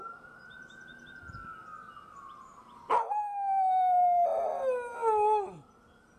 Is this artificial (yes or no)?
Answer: no